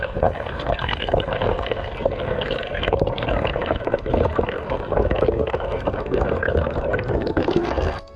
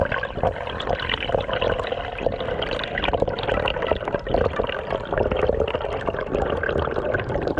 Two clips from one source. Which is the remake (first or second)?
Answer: first